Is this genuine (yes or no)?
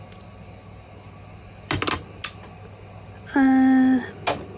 yes